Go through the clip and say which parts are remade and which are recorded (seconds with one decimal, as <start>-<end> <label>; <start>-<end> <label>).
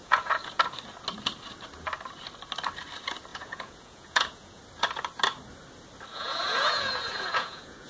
0.0-0.6 remade; 0.6-3.3 recorded; 3.3-4.6 remade; 4.6-6.1 recorded; 6.1-7.9 remade